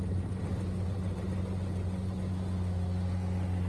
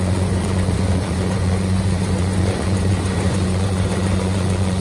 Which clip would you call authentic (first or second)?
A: first